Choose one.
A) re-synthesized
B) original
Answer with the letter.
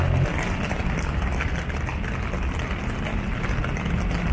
B